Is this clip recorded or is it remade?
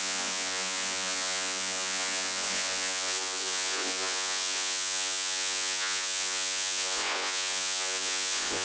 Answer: remade